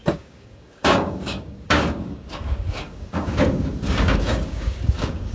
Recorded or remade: remade